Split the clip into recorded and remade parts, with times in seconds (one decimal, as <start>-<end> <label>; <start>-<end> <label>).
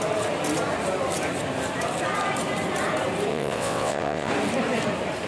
0.0-3.3 recorded; 3.3-4.3 remade; 4.3-5.3 recorded